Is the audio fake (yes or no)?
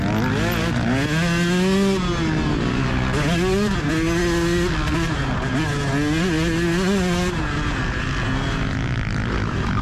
no